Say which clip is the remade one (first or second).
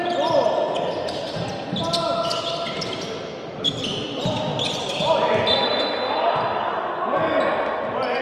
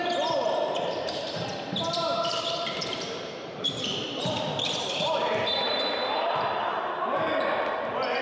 second